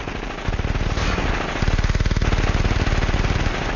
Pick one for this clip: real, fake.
real